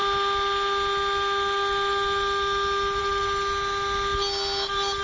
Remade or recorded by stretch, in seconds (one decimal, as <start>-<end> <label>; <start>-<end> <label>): 0.0-5.0 recorded